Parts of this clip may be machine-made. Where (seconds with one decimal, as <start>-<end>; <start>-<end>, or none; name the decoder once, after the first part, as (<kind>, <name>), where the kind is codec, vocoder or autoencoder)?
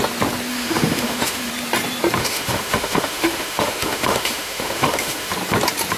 0.5-1.5 (autoencoder, DAC-VAE); 2.2-5.3